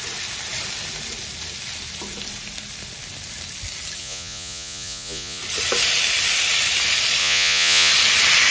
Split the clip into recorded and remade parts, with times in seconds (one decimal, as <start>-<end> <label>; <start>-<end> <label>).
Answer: 0.0-4.0 recorded; 4.0-5.4 remade; 5.4-7.2 recorded; 7.2-7.9 remade; 7.9-8.5 recorded